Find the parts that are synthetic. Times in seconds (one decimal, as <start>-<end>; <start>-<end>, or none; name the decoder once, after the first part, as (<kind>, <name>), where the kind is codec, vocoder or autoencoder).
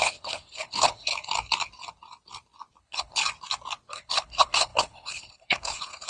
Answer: 0.0-1.1 (codec, HILCodec); 2.8-3.2; 3.9-6.1